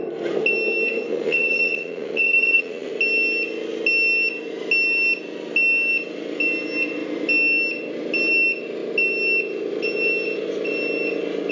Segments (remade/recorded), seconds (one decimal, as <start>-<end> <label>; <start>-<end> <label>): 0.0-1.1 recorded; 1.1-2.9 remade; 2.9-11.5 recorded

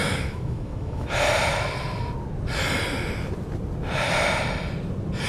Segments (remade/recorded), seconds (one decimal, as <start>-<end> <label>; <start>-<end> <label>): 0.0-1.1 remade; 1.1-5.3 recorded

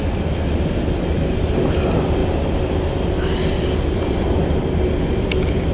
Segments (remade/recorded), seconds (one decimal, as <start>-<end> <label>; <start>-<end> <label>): 0.0-2.2 remade; 2.2-4.0 recorded; 4.0-5.7 remade

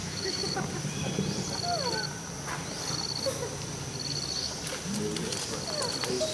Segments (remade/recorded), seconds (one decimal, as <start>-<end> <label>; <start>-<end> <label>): 0.0-0.5 remade; 0.5-6.3 recorded

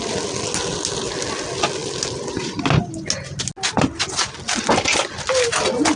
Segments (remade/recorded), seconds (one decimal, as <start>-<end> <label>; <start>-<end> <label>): 0.0-6.0 recorded

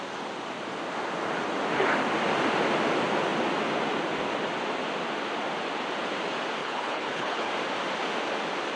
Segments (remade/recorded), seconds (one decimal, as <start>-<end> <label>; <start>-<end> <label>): 0.0-6.6 recorded; 6.6-7.5 remade; 7.5-8.8 recorded

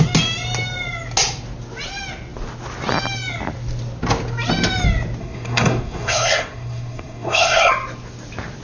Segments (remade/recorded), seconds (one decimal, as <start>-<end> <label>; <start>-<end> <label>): 0.0-5.2 recorded; 5.2-7.7 remade; 7.7-8.6 recorded